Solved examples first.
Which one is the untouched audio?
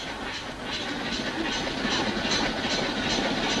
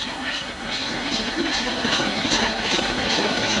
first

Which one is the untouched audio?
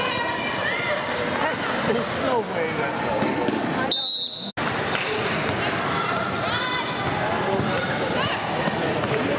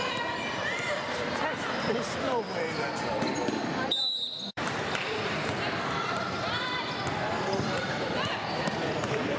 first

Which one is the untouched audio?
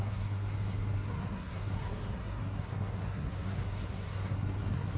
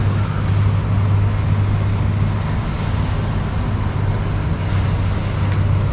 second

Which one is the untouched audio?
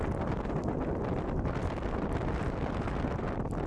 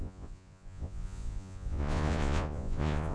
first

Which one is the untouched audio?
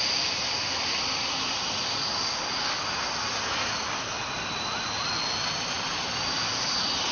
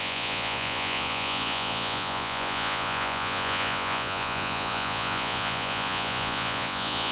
first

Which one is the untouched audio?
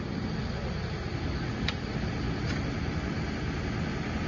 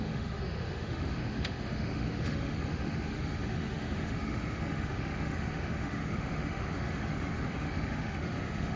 first